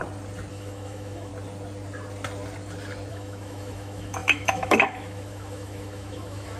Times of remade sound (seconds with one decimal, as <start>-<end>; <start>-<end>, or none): 0.5-1.3; 3.1-6.6

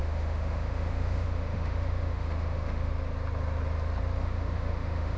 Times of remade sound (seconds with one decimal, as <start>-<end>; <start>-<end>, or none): 0.0-2.9; 4.2-5.2

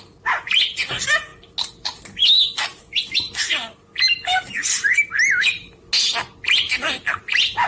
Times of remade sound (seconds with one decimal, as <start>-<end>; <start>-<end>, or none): none